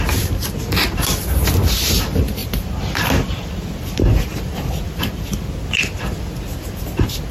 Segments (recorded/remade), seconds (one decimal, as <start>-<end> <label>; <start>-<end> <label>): 0.0-7.3 recorded